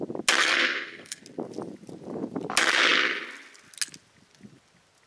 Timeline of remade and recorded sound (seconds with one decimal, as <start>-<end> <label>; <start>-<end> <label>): 0.0-0.4 recorded; 0.4-1.2 remade; 1.2-5.1 recorded